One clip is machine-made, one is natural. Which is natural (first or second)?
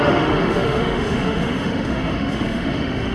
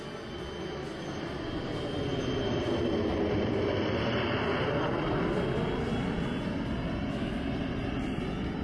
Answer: second